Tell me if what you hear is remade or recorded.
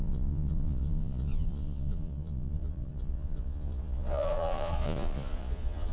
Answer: remade